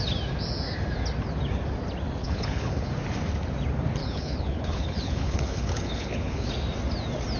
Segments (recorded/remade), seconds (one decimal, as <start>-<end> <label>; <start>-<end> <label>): 0.0-2.2 recorded; 2.2-2.9 remade; 2.9-4.0 recorded; 4.0-6.5 remade; 6.5-7.4 recorded